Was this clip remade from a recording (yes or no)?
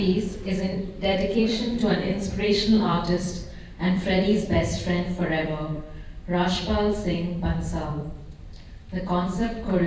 yes